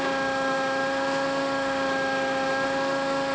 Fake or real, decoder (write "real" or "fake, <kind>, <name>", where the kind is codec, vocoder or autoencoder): fake, autoencoder, DAC-VAE